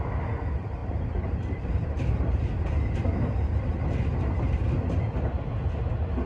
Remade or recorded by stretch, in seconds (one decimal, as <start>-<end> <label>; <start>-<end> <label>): 0.0-0.8 recorded; 0.8-1.9 remade; 1.9-6.3 recorded